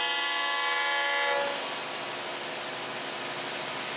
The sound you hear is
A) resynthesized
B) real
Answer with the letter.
B